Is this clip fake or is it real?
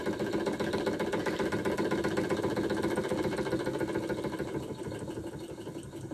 real